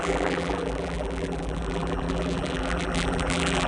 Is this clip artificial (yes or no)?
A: yes